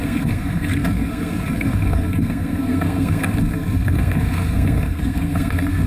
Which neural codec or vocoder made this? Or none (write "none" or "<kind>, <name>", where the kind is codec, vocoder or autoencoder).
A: codec, SNAC